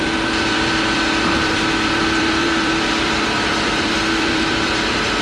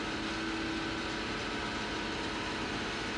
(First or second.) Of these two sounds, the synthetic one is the first